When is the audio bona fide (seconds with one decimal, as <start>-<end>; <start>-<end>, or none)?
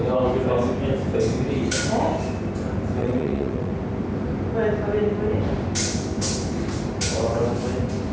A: 0.0-3.0; 3.7-8.1